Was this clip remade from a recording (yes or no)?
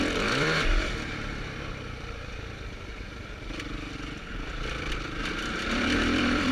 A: yes